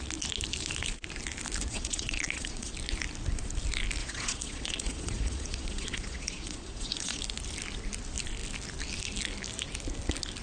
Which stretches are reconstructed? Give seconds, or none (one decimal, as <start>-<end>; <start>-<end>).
1.7-2.7; 4.0-7.2